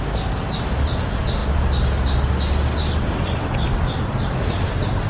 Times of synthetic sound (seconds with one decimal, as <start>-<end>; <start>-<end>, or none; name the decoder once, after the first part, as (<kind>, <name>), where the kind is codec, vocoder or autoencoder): none